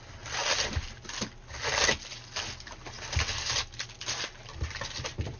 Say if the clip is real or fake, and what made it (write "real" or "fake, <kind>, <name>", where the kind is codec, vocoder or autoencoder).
real